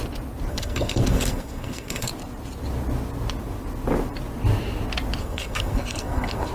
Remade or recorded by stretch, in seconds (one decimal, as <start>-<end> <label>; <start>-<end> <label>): 0.0-0.5 recorded; 0.5-2.1 remade; 2.1-5.2 recorded; 5.2-6.5 remade